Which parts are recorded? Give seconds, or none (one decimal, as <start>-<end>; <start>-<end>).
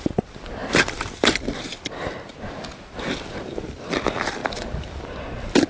0.6-3.3